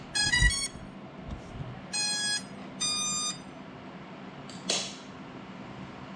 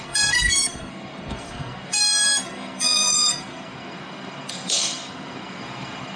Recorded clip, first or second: first